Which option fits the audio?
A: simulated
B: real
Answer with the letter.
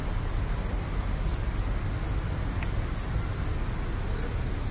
B